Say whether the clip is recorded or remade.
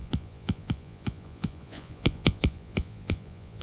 remade